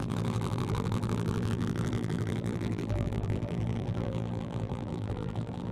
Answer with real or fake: fake